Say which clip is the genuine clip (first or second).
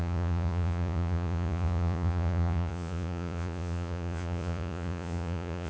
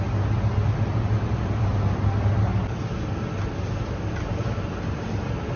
second